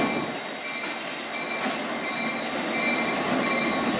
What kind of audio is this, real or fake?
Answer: real